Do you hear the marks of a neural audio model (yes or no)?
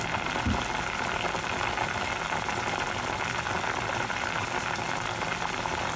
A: no